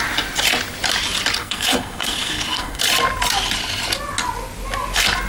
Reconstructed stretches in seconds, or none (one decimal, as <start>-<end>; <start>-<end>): 1.4-2.8